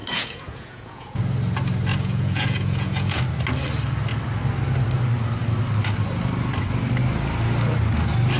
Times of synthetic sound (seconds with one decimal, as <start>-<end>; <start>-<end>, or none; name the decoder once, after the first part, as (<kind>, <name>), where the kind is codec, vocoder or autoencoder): 0.0-1.2 (vocoder, Vocos); 1.9-3.2